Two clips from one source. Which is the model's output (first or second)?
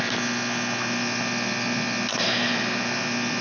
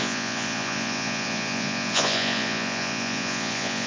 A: second